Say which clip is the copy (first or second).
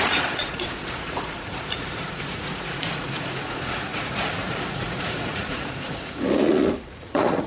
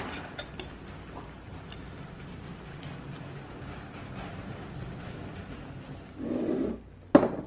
first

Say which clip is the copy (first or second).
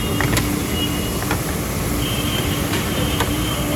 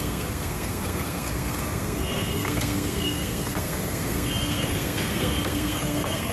second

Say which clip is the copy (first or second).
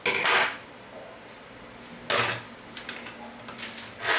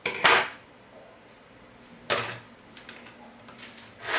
second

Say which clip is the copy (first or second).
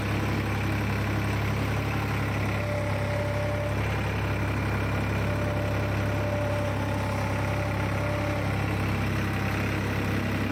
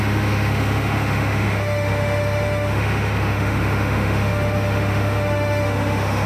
second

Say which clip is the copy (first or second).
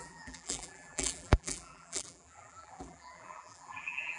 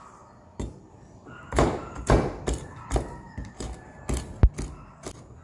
first